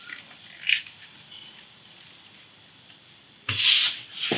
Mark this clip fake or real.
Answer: real